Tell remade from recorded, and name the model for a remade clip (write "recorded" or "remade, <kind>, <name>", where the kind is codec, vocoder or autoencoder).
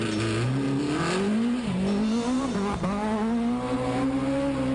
recorded